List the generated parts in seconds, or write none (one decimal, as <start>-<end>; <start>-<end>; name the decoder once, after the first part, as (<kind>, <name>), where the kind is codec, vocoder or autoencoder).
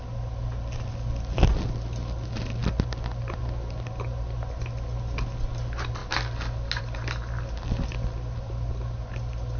none